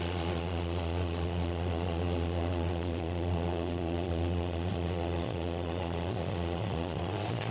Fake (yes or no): yes